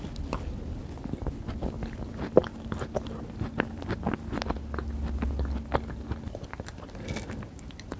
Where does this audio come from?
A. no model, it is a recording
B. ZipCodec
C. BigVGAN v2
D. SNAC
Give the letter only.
A